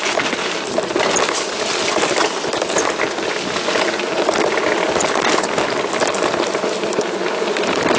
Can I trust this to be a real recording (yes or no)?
yes